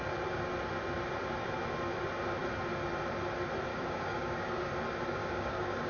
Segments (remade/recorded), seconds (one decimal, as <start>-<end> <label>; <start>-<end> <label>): 0.0-3.7 recorded; 3.7-4.7 remade; 4.7-5.2 recorded; 5.2-5.9 remade